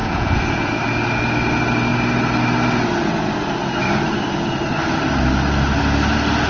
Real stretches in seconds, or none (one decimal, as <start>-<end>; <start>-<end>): 0.7-6.5